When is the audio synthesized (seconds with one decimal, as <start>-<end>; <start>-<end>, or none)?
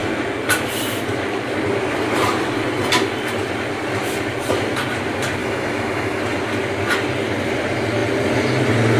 5.4-6.2